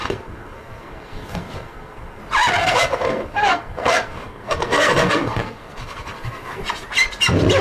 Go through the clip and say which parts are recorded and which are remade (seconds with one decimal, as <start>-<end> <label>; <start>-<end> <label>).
0.0-2.2 remade; 2.2-2.6 recorded; 2.6-6.6 remade; 6.6-7.6 recorded